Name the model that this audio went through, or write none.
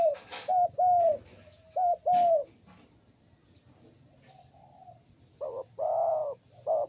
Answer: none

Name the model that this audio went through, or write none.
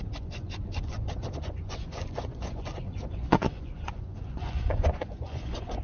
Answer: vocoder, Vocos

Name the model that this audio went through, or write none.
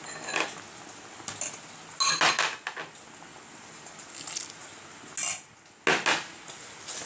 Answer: none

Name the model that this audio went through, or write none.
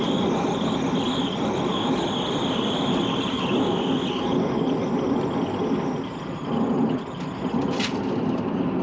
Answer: none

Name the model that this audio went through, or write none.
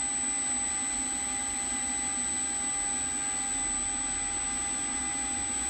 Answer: none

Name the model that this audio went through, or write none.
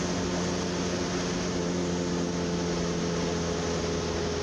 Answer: none